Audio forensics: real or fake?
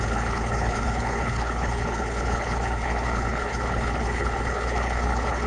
fake